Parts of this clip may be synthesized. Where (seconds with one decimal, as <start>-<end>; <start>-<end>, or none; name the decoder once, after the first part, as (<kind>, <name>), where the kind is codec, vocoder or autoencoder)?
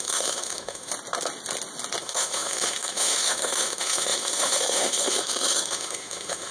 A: 0.0-0.9 (autoencoder, DAC-VAE); 2.0-6.5